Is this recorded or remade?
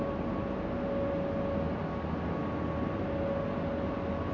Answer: recorded